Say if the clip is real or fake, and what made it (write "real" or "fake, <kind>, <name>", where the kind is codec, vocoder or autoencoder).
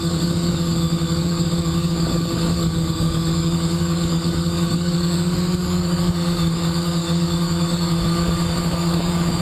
fake, codec, DAC